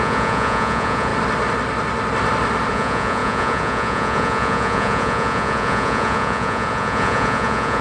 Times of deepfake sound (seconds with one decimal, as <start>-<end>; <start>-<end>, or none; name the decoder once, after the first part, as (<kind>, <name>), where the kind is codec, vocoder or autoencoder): 0.0-1.1 (vocoder, Vocos); 2.7-7.8

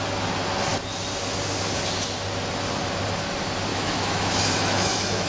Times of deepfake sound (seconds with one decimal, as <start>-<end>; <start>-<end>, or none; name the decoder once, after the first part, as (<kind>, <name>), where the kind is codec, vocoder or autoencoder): 3.7-5.3 (autoencoder, DAC-VAE)